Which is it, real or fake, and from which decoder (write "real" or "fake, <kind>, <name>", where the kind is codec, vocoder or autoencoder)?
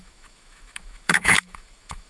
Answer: fake, autoencoder, DAC-VAE